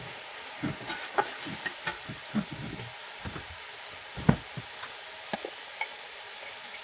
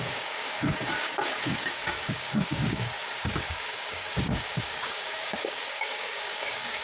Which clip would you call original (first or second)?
first